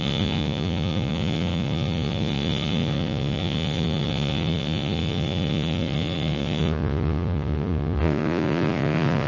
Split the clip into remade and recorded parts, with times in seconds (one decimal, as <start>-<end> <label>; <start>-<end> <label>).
0.0-9.3 remade